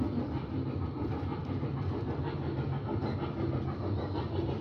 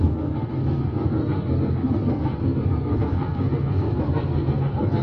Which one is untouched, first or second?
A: first